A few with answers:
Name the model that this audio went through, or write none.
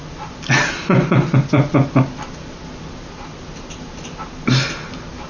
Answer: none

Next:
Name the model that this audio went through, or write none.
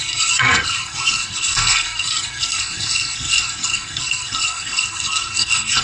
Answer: codec, SNAC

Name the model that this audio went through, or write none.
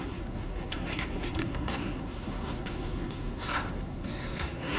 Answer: codec, SNAC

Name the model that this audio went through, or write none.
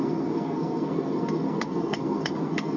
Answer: codec, SNAC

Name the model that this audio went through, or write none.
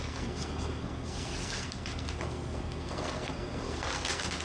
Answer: codec, SNAC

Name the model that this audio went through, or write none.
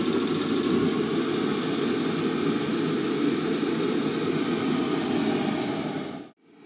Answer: none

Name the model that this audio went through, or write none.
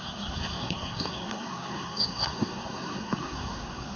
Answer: codec, SNAC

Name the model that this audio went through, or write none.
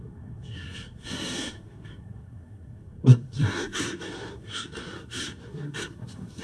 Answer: codec, SNAC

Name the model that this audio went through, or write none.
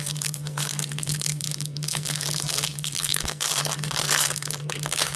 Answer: codec, SNAC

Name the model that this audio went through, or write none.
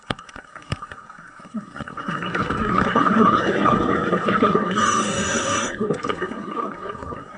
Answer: codec, SNAC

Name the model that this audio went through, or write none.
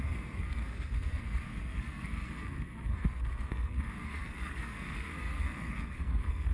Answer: codec, SNAC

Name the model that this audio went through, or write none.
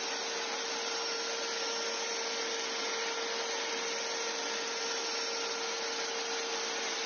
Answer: none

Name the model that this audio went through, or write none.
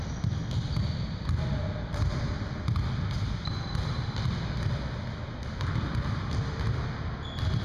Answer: none